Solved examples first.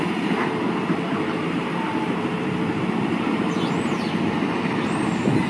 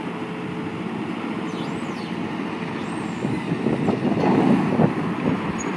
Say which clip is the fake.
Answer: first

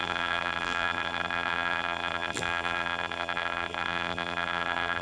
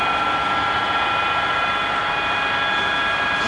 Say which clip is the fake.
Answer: first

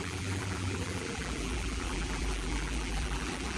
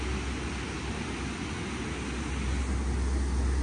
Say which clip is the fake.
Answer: first